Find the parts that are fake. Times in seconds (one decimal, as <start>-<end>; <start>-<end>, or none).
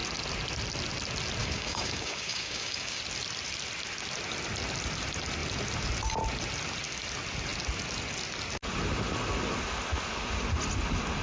1.4-3.0